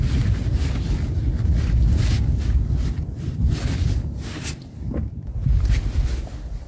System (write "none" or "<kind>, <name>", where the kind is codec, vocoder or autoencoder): none